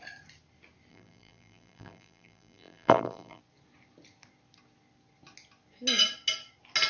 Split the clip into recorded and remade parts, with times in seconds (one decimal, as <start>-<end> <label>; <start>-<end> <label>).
0.0-0.9 recorded; 0.9-3.4 remade; 3.4-6.9 recorded